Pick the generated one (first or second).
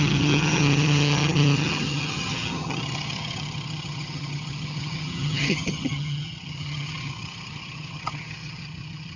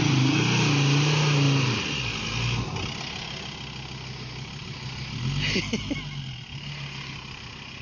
first